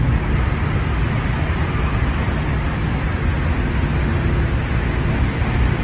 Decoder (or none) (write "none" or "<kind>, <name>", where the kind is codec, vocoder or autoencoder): none